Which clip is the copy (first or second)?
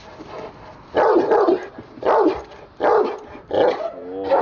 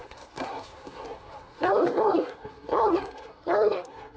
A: second